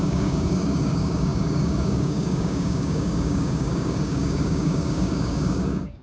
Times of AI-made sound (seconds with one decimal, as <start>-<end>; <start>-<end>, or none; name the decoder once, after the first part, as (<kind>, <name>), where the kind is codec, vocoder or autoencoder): 0.0-6.0 (codec, DAC)